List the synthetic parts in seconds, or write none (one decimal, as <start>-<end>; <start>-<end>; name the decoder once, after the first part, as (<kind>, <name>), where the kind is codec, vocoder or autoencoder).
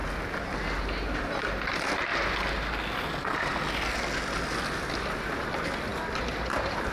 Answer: none